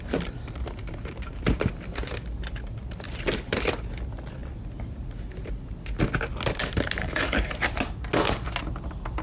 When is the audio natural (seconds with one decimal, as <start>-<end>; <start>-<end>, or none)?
0.0-7.0; 7.5-9.2